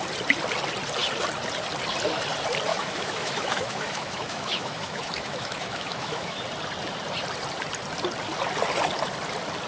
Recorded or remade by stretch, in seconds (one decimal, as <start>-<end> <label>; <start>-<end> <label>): 0.0-2.7 recorded; 2.7-6.4 remade; 6.4-9.7 recorded